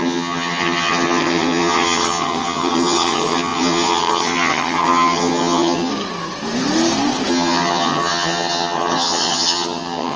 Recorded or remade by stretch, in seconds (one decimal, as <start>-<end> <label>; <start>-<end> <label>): 0.0-5.9 remade; 5.9-7.3 recorded; 7.3-10.2 remade